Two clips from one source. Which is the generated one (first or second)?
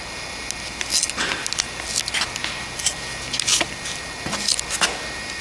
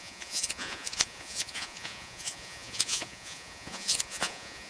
second